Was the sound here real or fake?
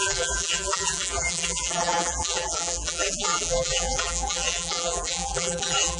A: fake